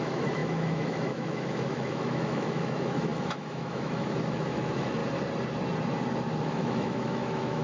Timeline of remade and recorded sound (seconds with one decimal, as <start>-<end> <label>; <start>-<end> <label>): 0.0-5.0 remade; 5.0-6.4 recorded; 6.4-7.6 remade